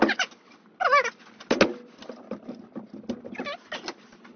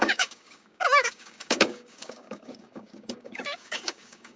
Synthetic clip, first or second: second